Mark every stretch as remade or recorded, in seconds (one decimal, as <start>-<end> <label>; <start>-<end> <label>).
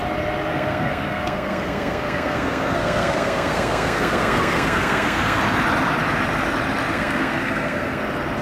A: 0.0-0.5 recorded; 0.5-5.4 remade; 5.4-6.9 recorded; 6.9-8.0 remade; 8.0-8.4 recorded